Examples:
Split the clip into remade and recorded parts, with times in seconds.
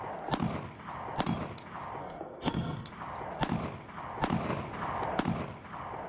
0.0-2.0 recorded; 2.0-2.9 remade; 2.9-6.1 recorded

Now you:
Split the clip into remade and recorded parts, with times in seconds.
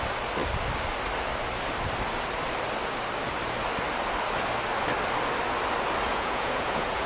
0.0-6.1 recorded; 6.1-7.1 remade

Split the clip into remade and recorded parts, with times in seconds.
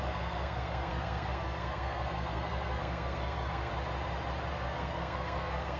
0.0-3.7 remade; 3.7-4.5 recorded; 4.5-5.8 remade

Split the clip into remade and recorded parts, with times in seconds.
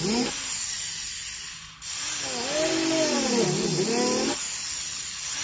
0.0-5.4 recorded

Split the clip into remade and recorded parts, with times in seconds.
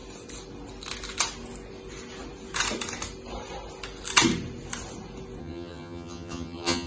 0.0-5.4 recorded; 5.4-6.9 remade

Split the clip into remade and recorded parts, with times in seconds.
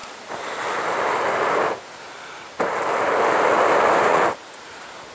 0.0-4.1 recorded; 4.1-5.1 remade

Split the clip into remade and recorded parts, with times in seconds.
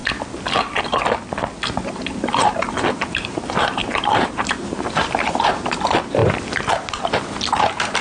0.0-2.9 recorded; 2.9-6.2 remade; 6.2-7.6 recorded; 7.6-8.0 remade